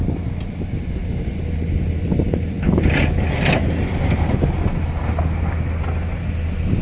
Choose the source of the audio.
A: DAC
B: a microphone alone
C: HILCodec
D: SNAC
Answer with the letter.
B